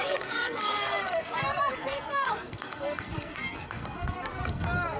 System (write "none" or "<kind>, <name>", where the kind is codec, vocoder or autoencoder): codec, SNAC